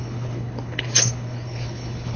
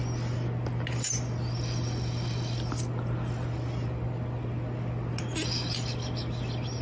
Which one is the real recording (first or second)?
second